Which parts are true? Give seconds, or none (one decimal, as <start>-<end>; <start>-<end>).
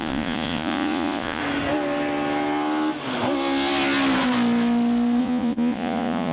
1.4-5.2